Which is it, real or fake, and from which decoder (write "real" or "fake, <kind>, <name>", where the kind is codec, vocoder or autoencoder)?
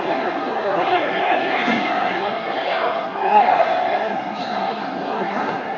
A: fake, codec, SNAC